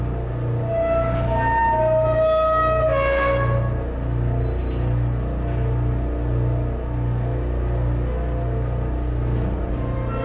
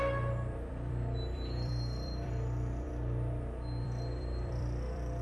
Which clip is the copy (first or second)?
second